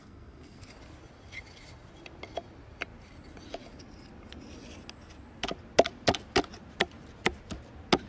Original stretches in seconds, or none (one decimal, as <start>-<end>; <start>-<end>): 0.7-8.1